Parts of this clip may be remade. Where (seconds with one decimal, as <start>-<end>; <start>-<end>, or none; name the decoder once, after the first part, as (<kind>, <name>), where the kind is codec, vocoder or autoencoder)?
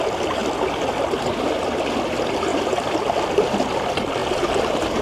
2.5-3.0 (vocoder, BigVGAN v2)